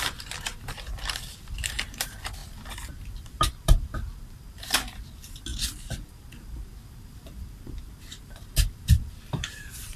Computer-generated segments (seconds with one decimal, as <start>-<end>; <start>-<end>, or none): 0.0-2.4; 2.9-5.5; 6.2-10.0